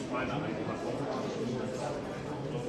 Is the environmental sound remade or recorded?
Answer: recorded